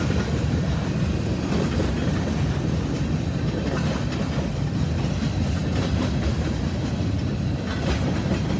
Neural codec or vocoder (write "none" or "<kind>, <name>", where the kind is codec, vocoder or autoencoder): none